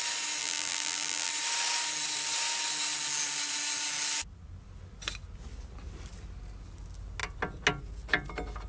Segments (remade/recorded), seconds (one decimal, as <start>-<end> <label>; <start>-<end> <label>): 0.0-0.4 recorded; 0.4-1.3 remade; 1.3-8.7 recorded